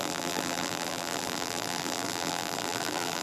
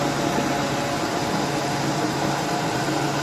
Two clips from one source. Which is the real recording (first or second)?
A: second